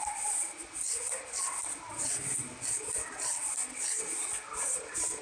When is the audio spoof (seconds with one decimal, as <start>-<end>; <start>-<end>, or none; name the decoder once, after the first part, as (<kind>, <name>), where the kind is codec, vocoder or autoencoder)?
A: none